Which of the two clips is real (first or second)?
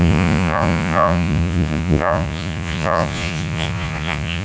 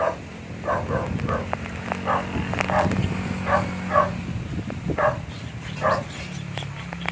second